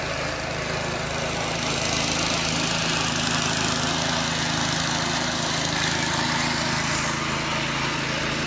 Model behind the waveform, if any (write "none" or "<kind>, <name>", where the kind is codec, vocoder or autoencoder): none